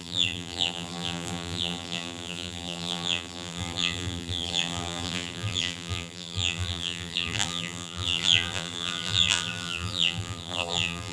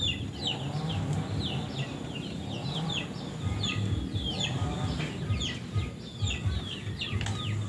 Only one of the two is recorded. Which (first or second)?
second